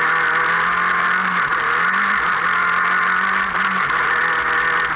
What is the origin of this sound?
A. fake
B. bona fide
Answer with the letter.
B